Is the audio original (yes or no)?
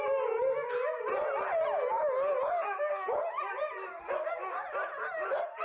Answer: yes